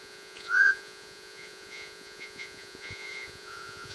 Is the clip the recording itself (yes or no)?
no